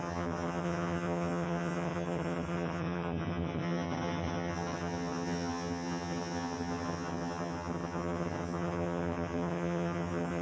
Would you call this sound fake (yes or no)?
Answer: yes